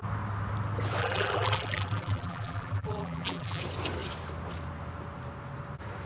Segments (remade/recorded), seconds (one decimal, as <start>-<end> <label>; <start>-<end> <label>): 0.0-1.0 recorded; 1.0-3.6 remade; 3.6-6.1 recorded